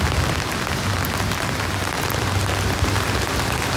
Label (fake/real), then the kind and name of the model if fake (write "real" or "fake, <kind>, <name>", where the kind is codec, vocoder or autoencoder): real